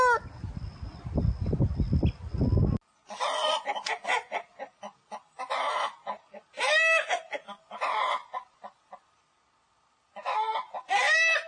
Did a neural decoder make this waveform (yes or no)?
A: no